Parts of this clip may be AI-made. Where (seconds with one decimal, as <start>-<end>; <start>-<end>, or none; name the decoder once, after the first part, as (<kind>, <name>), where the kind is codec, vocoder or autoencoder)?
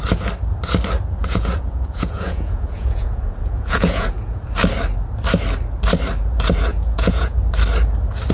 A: 1.2-4.4 (vocoder, Vocos); 6.7-7.4